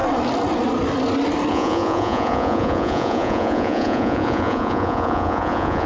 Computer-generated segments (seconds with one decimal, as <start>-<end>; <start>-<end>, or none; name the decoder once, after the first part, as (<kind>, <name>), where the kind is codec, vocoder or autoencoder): 1.5-5.9 (vocoder, Vocos)